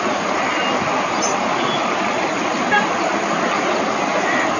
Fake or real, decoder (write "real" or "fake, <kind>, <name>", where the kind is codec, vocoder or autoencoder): real